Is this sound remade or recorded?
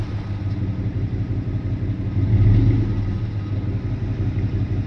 recorded